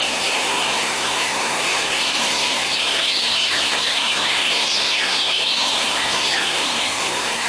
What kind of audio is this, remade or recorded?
remade